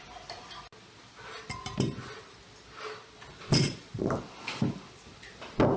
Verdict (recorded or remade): recorded